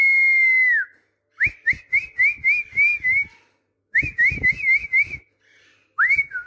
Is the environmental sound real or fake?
real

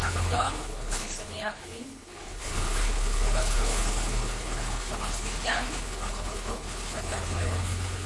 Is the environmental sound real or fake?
fake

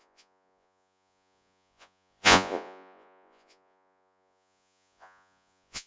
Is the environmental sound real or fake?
fake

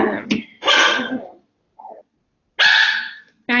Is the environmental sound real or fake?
real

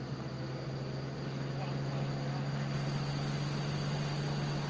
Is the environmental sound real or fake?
real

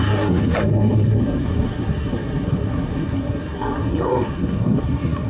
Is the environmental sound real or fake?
fake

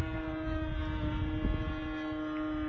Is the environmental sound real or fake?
real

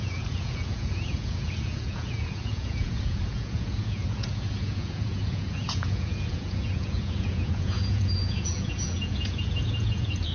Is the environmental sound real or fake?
fake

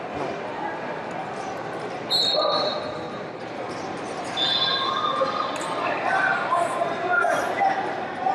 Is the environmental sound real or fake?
real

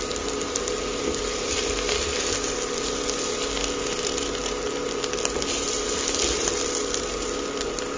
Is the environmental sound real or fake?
real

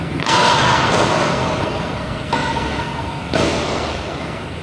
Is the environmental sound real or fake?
fake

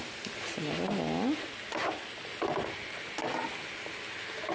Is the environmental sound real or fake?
real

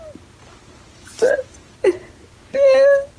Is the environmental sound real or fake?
real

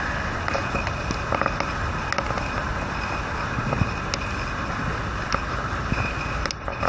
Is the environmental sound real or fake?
real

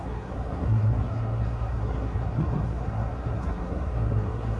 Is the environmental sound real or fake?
fake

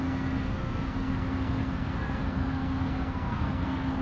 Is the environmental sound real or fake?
fake